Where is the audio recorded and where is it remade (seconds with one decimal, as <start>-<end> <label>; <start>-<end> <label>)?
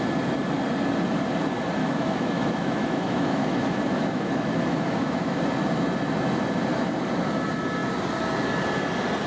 0.0-1.8 recorded; 1.8-5.4 remade; 5.4-9.3 recorded